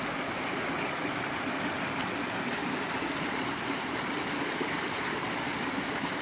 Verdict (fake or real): real